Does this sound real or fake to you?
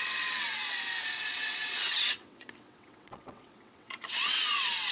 fake